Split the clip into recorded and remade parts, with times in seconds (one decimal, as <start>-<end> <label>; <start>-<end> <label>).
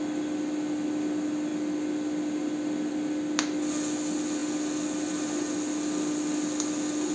0.0-7.1 recorded